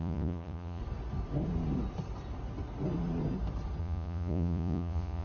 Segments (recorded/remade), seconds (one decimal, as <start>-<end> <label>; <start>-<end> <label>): 0.0-0.8 remade; 0.8-3.8 recorded; 3.8-5.2 remade